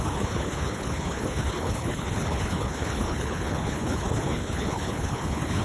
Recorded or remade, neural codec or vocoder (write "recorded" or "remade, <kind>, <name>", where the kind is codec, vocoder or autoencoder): remade, codec, HILCodec